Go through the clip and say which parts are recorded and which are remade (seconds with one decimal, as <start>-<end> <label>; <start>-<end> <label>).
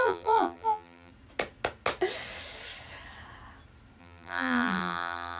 0.0-1.1 remade; 1.1-4.0 recorded; 4.0-5.4 remade